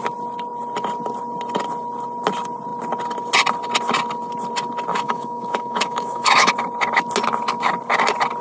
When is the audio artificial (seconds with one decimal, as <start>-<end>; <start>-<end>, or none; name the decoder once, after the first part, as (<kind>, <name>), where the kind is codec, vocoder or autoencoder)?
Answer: 4.9-6.5 (autoencoder, DAC-VAE)